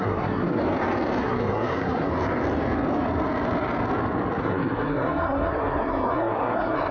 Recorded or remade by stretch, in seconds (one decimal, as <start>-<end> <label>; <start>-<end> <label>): 0.0-0.6 remade; 0.6-1.2 recorded; 1.2-2.1 remade; 2.1-4.4 recorded; 4.4-6.9 remade